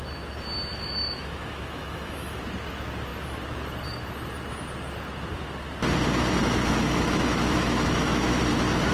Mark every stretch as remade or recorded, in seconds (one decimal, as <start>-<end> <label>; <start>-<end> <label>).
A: 0.0-0.7 recorded; 0.7-2.4 remade; 2.4-6.4 recorded; 6.4-8.4 remade; 8.4-8.9 recorded